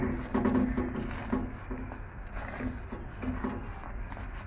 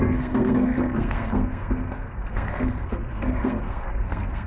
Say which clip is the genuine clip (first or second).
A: first